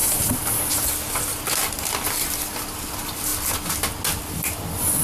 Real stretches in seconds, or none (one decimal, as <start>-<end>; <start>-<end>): 0.0-5.0